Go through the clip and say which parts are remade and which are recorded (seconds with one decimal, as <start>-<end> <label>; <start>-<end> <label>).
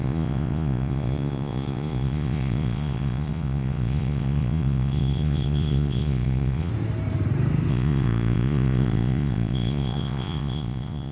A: 0.0-6.7 remade; 6.7-7.7 recorded; 7.7-11.1 remade